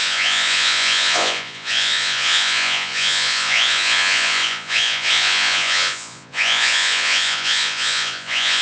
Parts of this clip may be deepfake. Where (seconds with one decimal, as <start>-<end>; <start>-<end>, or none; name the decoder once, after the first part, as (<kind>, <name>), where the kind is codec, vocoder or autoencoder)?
0.0-8.6 (vocoder, Vocos)